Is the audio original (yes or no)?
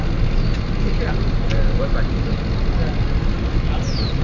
yes